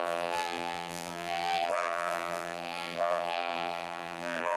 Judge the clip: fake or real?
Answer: fake